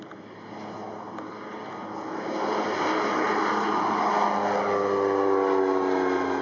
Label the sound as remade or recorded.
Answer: recorded